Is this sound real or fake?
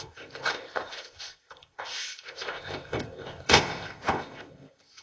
fake